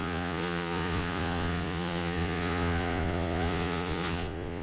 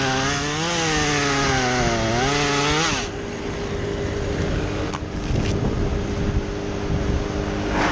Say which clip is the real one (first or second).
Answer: second